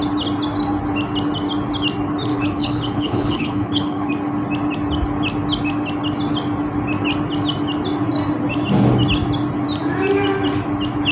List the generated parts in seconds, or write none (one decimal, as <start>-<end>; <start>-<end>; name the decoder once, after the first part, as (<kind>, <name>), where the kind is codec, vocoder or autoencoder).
2.3-4.1 (codec, HILCodec)